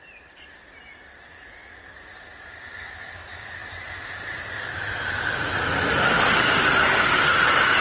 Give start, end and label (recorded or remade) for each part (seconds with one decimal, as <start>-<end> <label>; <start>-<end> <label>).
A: 0.0-7.8 recorded